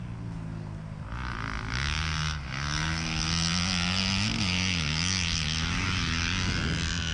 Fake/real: real